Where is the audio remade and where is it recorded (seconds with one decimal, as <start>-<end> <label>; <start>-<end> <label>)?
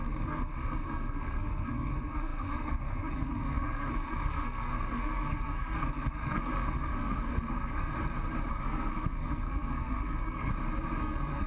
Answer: 0.0-7.9 remade; 7.9-8.5 recorded; 8.5-10.5 remade; 10.5-11.0 recorded; 11.0-11.5 remade